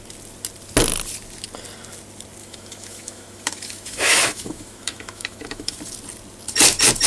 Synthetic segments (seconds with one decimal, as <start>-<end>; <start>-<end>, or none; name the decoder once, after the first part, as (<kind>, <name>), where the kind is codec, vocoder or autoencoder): 2.4-5.8 (autoencoder, DAC-VAE)